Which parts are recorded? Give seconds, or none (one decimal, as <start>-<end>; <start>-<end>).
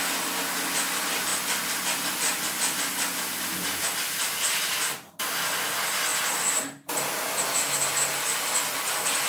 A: 0.0-9.3